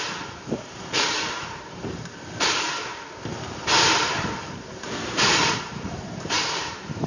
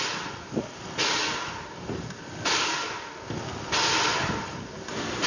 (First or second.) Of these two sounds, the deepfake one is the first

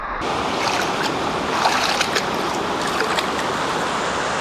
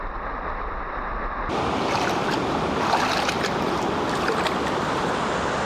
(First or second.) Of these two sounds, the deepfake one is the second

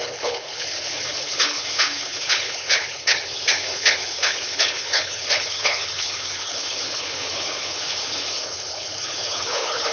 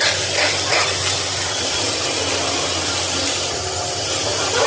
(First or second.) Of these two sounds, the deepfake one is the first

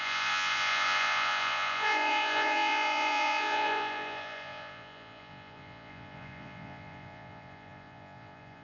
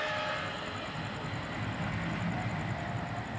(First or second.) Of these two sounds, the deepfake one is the first